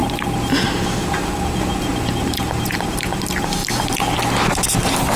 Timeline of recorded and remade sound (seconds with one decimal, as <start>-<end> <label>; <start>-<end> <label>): 0.0-1.9 recorded; 1.9-3.2 remade; 3.2-5.2 recorded

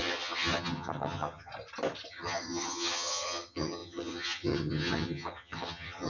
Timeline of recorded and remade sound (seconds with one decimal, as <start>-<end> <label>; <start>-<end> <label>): 0.0-1.5 remade; 1.5-2.1 recorded; 2.1-6.1 remade

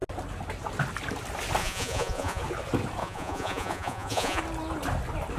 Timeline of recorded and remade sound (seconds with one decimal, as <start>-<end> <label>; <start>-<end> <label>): 0.0-1.6 recorded; 1.6-2.4 remade; 2.4-3.0 recorded; 3.0-4.4 remade; 4.4-5.4 recorded

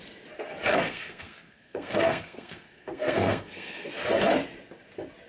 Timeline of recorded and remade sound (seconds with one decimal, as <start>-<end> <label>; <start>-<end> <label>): 0.0-0.7 recorded; 0.7-3.9 remade; 3.9-5.3 recorded

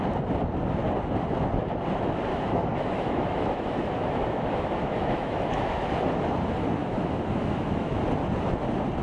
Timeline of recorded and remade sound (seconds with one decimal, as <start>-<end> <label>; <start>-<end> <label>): 0.0-2.3 recorded; 2.3-5.9 remade; 5.9-6.8 recorded; 6.8-8.0 remade; 8.0-9.0 recorded

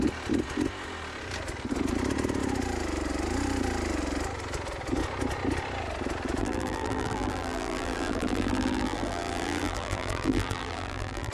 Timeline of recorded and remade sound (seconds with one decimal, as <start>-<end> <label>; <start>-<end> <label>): 0.0-6.4 recorded; 6.4-11.3 remade